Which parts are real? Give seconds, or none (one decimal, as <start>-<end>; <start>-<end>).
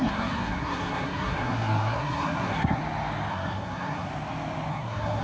2.8-3.3; 4.1-4.7